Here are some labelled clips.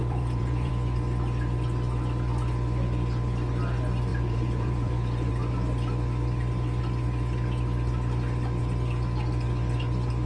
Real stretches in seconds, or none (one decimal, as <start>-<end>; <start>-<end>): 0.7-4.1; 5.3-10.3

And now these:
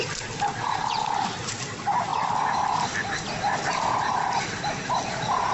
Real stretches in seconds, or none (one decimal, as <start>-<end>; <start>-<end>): 0.0-5.5

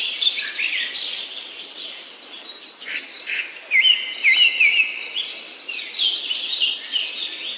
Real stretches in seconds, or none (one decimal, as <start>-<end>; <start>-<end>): 0.0-1.2; 3.5-5.3; 6.3-7.6